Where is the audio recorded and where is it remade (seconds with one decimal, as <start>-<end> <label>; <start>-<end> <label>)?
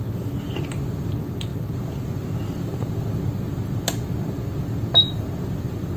0.0-6.0 recorded